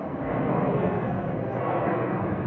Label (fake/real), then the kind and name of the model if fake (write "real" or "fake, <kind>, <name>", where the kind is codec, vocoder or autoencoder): fake, codec, SNAC